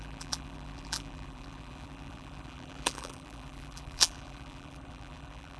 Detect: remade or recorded remade